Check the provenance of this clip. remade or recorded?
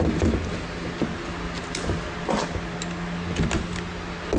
recorded